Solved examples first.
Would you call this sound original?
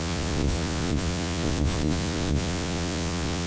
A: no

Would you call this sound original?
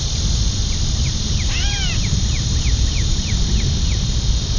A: yes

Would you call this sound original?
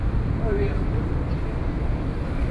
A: yes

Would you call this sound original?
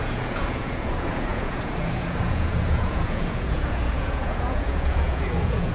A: no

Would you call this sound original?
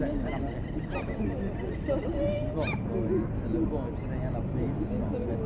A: yes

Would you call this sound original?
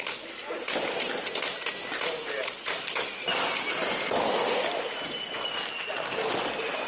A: yes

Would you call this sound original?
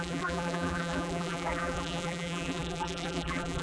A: no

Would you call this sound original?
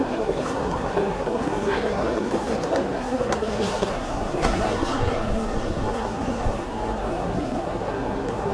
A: no